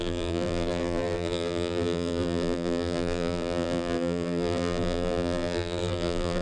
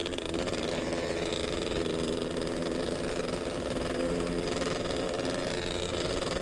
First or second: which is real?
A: second